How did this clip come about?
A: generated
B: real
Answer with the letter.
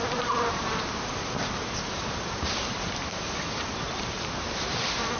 A